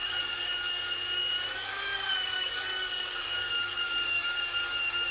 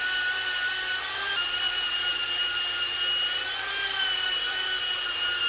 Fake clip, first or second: first